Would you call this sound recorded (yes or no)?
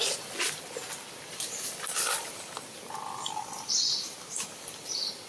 yes